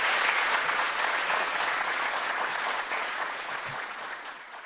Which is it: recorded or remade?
remade